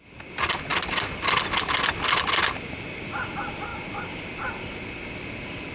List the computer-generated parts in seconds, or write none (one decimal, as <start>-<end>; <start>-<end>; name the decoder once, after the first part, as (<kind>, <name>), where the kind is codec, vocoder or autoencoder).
none